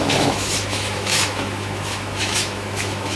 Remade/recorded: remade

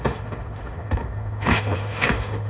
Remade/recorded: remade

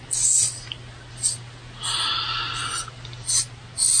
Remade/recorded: recorded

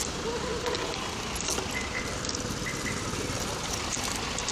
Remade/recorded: recorded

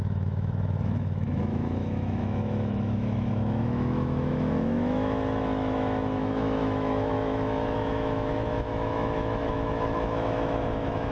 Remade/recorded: remade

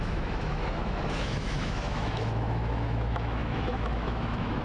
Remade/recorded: remade